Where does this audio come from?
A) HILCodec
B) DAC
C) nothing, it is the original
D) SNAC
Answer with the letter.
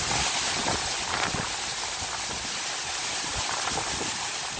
C